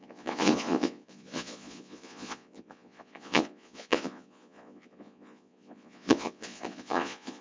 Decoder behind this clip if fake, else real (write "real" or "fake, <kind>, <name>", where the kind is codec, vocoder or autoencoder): fake, vocoder, Vocos